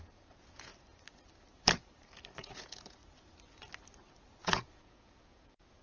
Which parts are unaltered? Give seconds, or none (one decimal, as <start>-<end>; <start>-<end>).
0.7-2.4; 3.0-4.4